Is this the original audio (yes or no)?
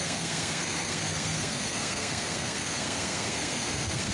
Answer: no